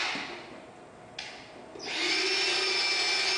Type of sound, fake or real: real